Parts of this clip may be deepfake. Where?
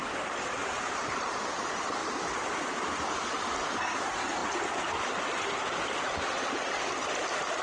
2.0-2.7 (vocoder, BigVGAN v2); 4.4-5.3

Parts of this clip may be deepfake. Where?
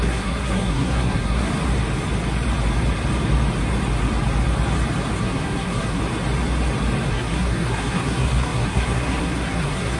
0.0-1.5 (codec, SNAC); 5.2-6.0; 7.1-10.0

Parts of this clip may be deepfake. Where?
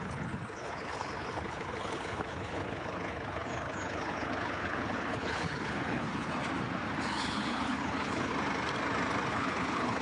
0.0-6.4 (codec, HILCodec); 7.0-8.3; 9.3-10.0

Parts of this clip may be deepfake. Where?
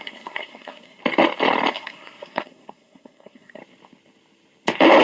0.0-1.0 (codec, SNAC); 1.7-3.6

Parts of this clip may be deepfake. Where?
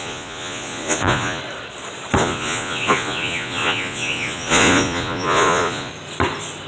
0.0-1.4 (vocoder, Vocos); 2.2-5.9